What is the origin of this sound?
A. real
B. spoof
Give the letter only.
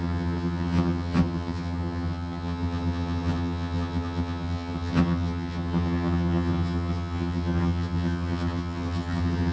B